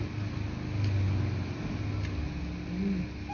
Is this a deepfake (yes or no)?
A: no